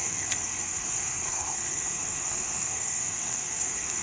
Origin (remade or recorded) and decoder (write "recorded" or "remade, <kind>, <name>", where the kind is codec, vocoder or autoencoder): remade, codec, SNAC